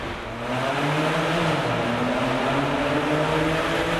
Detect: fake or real real